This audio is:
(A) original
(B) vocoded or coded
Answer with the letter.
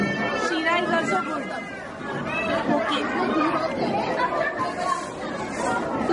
A